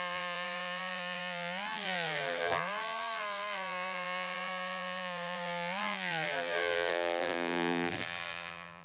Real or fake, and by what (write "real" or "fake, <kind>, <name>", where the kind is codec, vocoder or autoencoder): fake, vocoder, BigVGAN v2